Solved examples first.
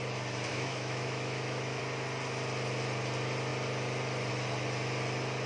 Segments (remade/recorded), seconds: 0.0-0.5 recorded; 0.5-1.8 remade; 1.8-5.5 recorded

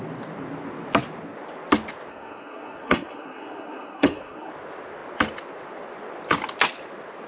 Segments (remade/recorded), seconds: 0.0-2.1 recorded; 2.1-4.5 remade; 4.5-7.3 recorded

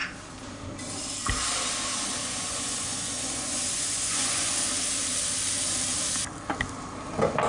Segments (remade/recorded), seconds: 0.0-2.2 recorded; 2.2-4.5 remade; 4.5-7.5 recorded

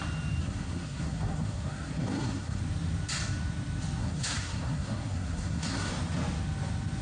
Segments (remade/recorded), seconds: 0.0-0.4 recorded; 0.4-2.6 remade; 2.6-4.0 recorded; 4.0-5.9 remade; 5.9-7.0 recorded

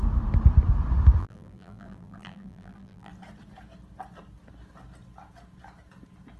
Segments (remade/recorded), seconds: 0.0-1.2 recorded; 1.2-3.1 remade; 3.1-6.4 recorded

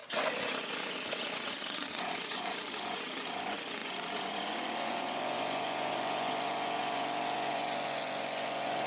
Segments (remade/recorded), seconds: 0.0-8.9 remade